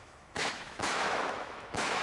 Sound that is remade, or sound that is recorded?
remade